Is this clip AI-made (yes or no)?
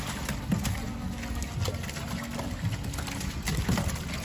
no